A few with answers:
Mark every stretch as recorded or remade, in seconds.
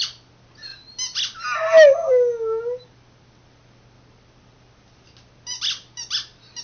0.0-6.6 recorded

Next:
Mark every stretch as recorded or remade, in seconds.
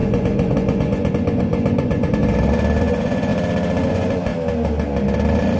0.0-2.2 remade; 2.2-2.8 recorded; 2.8-3.3 remade; 3.3-3.9 recorded; 3.9-4.3 remade; 4.3-5.6 recorded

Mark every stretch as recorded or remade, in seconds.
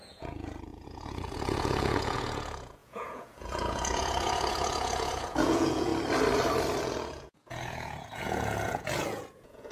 0.0-5.9 remade; 5.9-6.8 recorded; 6.8-9.7 remade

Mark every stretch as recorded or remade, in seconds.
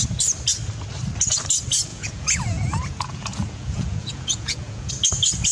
0.0-1.9 recorded; 1.9-4.9 remade; 4.9-5.5 recorded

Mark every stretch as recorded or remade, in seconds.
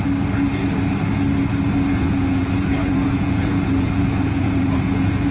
0.0-1.9 recorded; 1.9-5.3 remade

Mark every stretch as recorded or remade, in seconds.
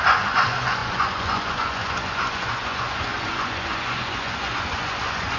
0.0-5.4 remade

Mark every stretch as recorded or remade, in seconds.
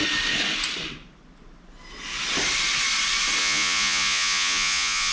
0.0-3.4 recorded; 3.4-5.1 remade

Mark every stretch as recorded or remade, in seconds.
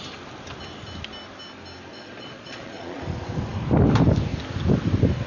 0.0-1.9 recorded; 1.9-3.0 remade; 3.0-5.3 recorded